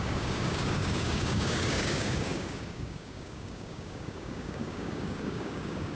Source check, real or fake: fake